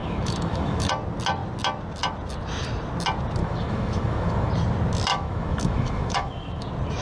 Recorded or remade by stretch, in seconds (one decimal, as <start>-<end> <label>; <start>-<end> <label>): 0.0-0.9 remade; 0.9-3.4 recorded; 3.4-4.5 remade; 4.5-5.1 recorded; 5.1-6.6 remade; 6.6-7.0 recorded